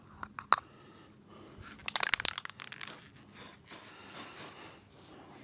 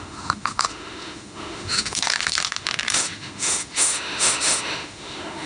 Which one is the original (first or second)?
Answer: first